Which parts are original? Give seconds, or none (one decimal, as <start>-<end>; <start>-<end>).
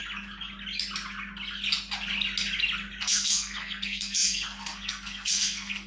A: 0.0-3.0